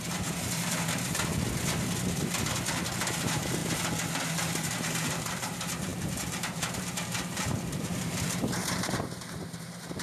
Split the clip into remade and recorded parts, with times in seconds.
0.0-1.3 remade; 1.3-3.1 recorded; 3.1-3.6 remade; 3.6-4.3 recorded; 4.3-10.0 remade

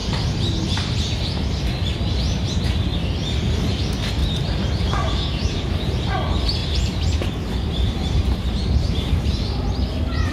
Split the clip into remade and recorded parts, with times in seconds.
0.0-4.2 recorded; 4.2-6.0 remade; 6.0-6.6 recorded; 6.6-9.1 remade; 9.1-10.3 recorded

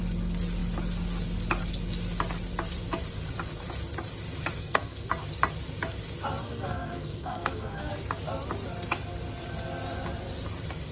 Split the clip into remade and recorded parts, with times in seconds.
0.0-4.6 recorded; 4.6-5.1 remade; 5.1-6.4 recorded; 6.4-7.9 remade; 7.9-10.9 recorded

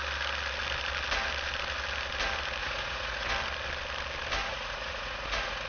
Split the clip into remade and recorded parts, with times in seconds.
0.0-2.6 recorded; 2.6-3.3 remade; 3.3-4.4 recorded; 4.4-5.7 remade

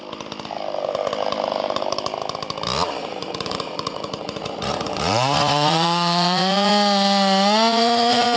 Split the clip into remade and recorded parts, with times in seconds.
0.0-3.0 recorded; 3.0-6.7 remade; 6.7-7.7 recorded; 7.7-8.4 remade

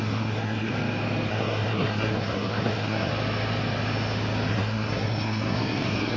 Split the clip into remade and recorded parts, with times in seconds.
0.0-0.7 remade; 0.7-1.3 recorded; 1.3-3.1 remade; 3.1-4.5 recorded; 4.5-6.2 remade